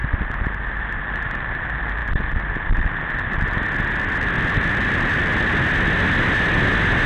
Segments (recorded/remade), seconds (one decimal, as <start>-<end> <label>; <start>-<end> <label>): 0.0-7.1 recorded